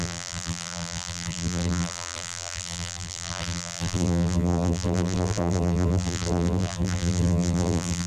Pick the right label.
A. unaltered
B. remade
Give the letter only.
B